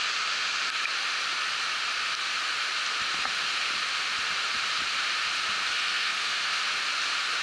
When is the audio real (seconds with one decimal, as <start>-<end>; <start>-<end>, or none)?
0.0-5.6; 6.6-7.4